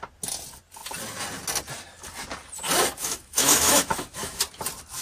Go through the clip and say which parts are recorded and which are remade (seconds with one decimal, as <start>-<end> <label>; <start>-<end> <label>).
0.0-3.0 recorded; 3.0-4.4 remade; 4.4-5.0 recorded